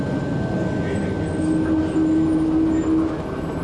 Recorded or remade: recorded